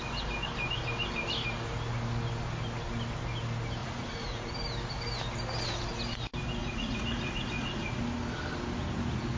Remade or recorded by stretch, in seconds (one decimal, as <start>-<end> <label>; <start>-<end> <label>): 0.0-3.8 recorded; 3.8-4.5 remade; 4.5-6.6 recorded; 6.6-8.0 remade; 8.0-9.4 recorded

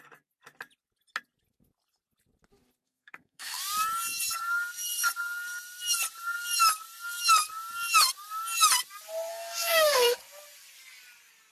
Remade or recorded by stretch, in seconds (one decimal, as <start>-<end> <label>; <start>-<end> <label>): 0.0-2.8 recorded; 2.8-3.6 remade; 3.6-9.3 recorded; 9.3-10.2 remade; 10.2-11.5 recorded

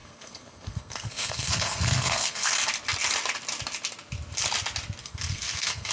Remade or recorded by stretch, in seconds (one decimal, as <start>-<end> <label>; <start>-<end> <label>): 0.0-2.5 remade; 2.5-5.0 recorded; 5.0-5.9 remade